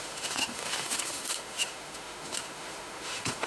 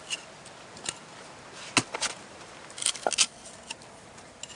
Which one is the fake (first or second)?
first